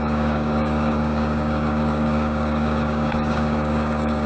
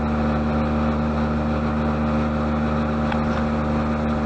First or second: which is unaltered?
second